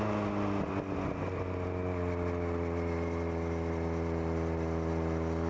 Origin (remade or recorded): recorded